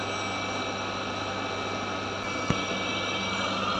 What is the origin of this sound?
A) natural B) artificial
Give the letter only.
A